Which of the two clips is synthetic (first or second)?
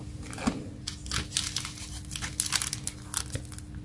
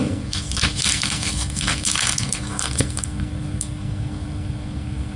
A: second